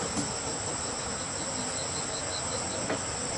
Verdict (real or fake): real